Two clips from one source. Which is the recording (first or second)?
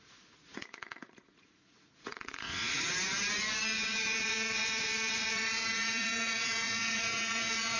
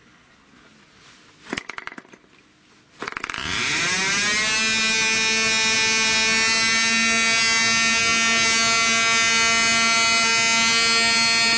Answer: second